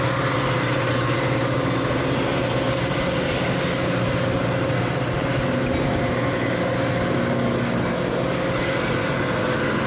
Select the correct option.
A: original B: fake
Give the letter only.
A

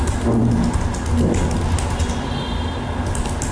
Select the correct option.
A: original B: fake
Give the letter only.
A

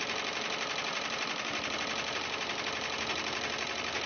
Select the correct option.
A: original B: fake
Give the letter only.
A